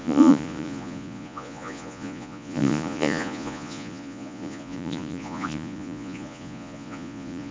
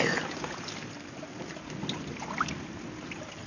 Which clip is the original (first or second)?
second